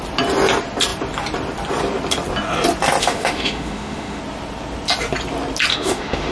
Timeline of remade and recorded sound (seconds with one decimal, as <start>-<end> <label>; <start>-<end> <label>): 0.0-3.0 recorded; 3.0-4.2 remade; 4.2-5.7 recorded; 5.7-6.3 remade